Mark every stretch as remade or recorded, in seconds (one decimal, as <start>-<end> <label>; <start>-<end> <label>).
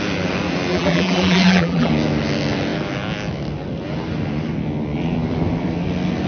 0.0-0.7 recorded; 0.7-1.9 remade; 1.9-6.3 recorded